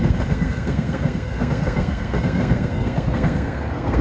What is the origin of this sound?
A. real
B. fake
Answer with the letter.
B